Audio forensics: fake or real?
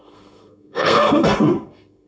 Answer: fake